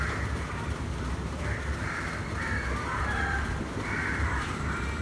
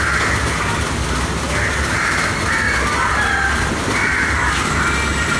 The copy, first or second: first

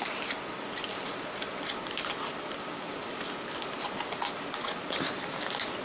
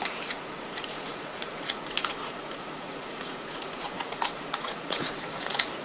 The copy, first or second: second